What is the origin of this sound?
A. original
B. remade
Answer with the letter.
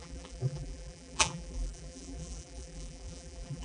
B